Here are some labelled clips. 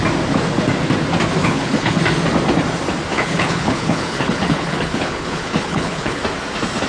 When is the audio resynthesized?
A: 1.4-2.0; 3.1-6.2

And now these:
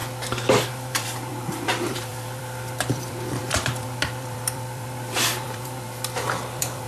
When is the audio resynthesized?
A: 0.7-6.9

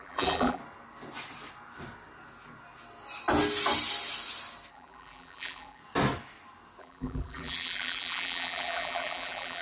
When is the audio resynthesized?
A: 0.0-0.6; 4.7-5.8; 6.8-9.6

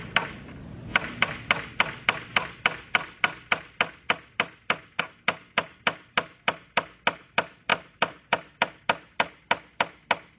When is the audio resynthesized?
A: 7.7-8.8

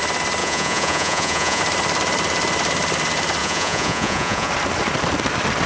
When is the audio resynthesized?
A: 0.4-1.6; 3.4-4.5